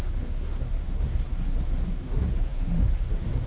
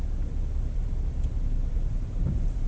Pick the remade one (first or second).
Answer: first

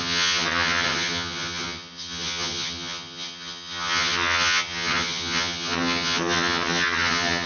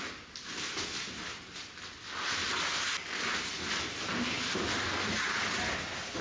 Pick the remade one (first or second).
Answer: first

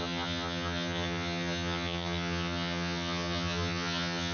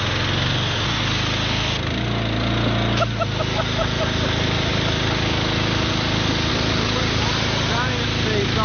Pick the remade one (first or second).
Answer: first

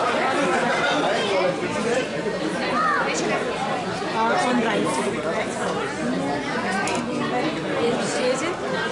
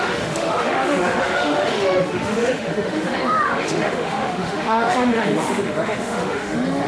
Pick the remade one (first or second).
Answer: second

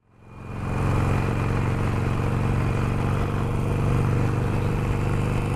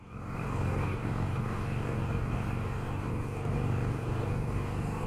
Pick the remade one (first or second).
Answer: second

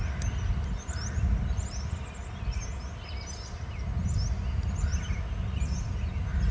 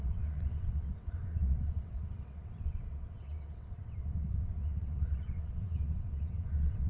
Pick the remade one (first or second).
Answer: second